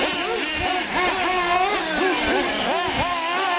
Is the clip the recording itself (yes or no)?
yes